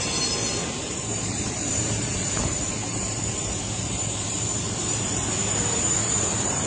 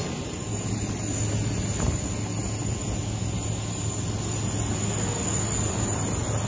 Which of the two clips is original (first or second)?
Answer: second